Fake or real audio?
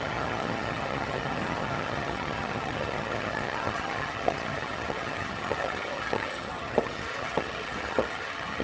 fake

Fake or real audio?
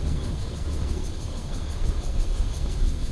fake